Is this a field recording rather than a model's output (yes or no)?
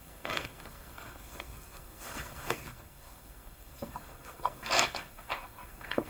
no